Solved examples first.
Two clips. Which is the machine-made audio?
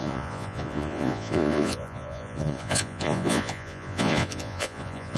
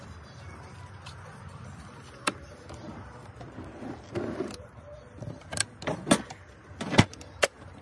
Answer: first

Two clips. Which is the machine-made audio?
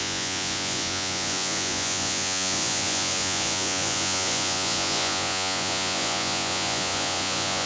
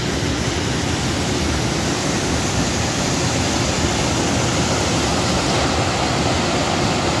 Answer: first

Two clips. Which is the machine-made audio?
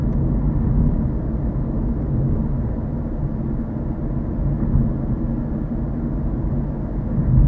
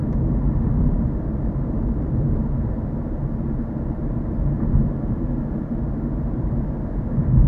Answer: second